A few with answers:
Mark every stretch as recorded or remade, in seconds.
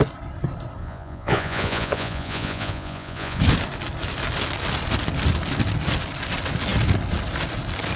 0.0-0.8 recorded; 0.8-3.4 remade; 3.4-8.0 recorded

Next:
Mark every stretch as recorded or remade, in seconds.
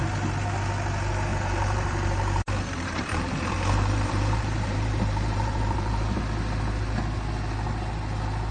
0.0-1.3 recorded; 1.3-6.2 remade; 6.2-8.5 recorded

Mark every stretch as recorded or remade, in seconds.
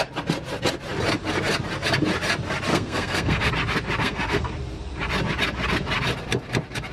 0.0-2.7 recorded; 2.7-3.5 remade; 3.5-4.0 recorded; 4.0-4.5 remade; 4.5-6.9 recorded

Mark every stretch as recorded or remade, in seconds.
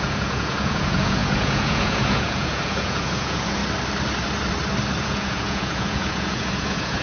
0.0-3.6 remade; 3.6-5.0 recorded; 5.0-7.0 remade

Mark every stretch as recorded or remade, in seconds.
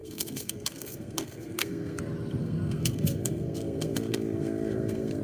0.0-2.0 remade; 2.0-2.4 recorded; 2.4-5.2 remade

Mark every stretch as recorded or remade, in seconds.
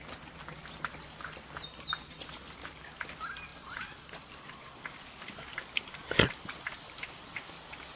0.0-3.5 recorded; 3.5-7.2 remade; 7.2-8.0 recorded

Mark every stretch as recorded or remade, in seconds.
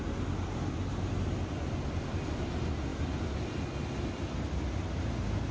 0.0-5.5 recorded